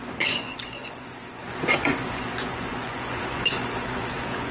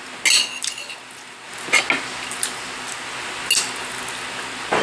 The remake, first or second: first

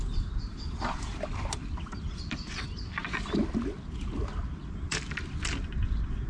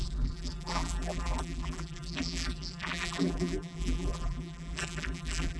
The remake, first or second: second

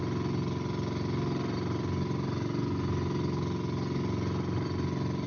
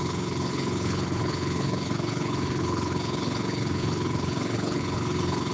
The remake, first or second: second